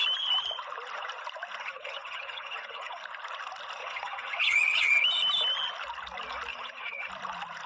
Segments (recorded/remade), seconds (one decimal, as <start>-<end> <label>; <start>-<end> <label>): 0.0-1.6 recorded; 1.6-3.0 remade; 3.0-3.8 recorded; 3.8-4.9 remade; 4.9-6.5 recorded; 6.5-7.1 remade; 7.1-7.7 recorded